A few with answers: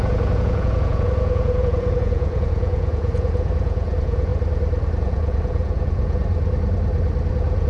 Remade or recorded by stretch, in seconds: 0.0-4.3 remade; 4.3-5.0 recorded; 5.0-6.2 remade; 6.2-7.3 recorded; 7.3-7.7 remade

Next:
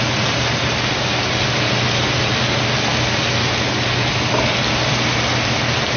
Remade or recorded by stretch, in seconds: 0.0-6.0 recorded

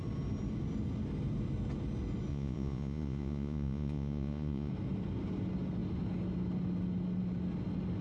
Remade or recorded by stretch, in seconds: 0.0-2.3 recorded; 2.3-4.7 remade; 4.7-8.0 recorded

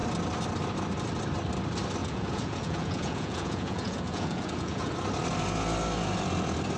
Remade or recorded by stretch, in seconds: 0.0-2.0 recorded; 2.0-4.9 remade; 4.9-6.8 recorded

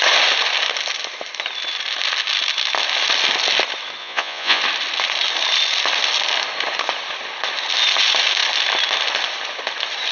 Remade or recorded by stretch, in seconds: 0.0-4.0 recorded; 4.0-4.6 remade; 4.6-10.1 recorded

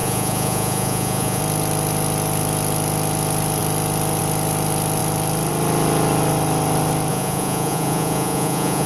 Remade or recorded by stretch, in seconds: 0.0-1.4 remade; 1.4-7.1 recorded; 7.1-8.9 remade

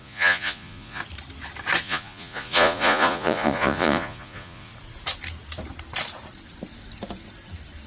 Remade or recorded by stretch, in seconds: 0.0-1.0 remade; 1.0-1.8 recorded; 1.8-4.7 remade; 4.7-7.9 recorded